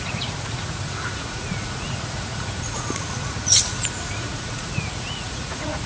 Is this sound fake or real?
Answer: fake